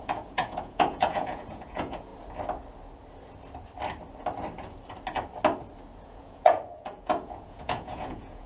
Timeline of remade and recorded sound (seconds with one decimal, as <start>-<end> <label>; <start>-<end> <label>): 0.0-2.1 remade; 2.1-6.0 recorded; 6.0-8.5 remade